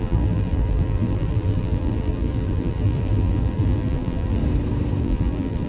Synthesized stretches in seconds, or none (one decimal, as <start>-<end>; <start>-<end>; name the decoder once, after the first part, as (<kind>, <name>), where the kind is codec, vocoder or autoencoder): 0.0-4.4 (vocoder, BigVGAN v2); 5.0-5.7